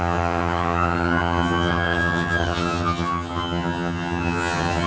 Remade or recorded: remade